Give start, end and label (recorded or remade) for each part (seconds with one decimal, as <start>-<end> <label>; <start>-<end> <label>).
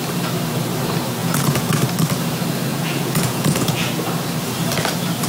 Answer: 0.0-1.2 recorded; 1.2-1.7 remade; 1.7-2.7 recorded; 2.7-3.9 remade; 3.9-5.3 recorded